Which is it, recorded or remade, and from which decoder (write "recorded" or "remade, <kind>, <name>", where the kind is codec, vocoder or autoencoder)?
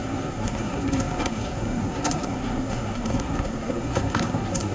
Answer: remade, codec, SNAC